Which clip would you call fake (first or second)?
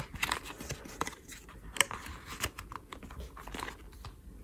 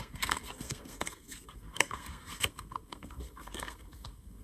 second